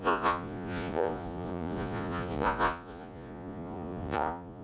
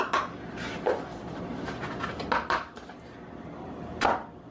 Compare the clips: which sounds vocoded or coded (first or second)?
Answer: first